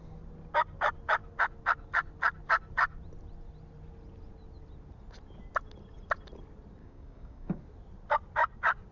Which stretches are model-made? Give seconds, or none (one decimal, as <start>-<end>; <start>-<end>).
6.8-7.6